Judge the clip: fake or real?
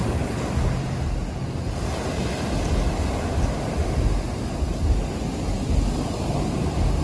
real